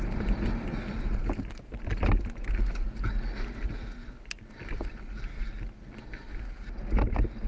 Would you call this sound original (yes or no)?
yes